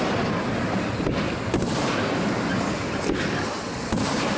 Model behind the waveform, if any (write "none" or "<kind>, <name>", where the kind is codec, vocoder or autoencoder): none